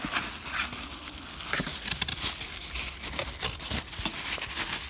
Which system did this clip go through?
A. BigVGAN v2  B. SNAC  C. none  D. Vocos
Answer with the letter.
C